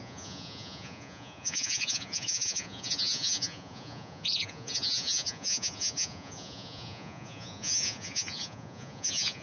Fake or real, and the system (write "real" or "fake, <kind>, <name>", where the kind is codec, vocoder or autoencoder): fake, vocoder, Vocos